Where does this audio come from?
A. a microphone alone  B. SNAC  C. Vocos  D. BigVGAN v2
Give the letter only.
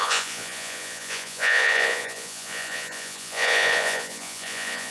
C